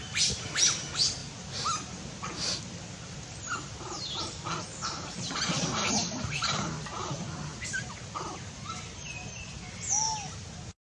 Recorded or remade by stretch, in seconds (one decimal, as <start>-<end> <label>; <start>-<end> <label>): 0.0-10.9 recorded